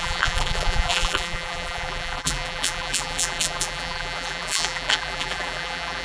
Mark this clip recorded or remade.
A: remade